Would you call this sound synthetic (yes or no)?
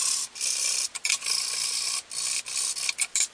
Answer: no